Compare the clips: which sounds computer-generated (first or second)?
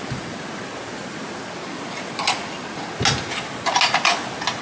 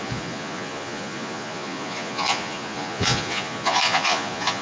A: second